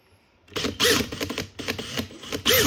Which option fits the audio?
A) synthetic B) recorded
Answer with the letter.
B